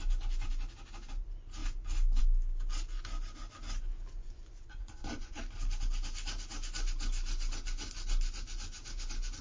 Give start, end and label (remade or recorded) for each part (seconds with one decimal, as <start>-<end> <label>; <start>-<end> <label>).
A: 0.0-4.2 recorded; 4.2-5.4 remade; 5.4-9.4 recorded